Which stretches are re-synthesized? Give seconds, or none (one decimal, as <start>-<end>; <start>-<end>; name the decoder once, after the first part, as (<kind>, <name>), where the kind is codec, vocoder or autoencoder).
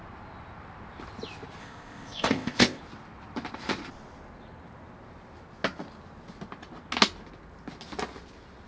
1.6-2.8 (codec, ZipCodec)